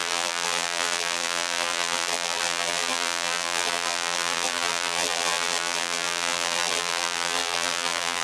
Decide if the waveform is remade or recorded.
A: remade